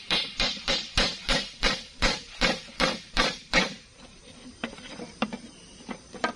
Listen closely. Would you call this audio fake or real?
fake